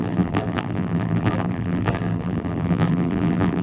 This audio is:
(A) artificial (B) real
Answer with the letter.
A